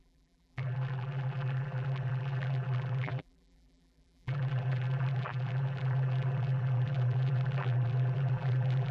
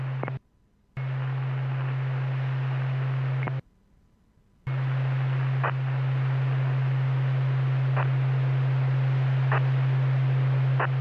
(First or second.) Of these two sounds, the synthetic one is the first